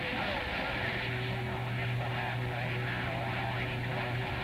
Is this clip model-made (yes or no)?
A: no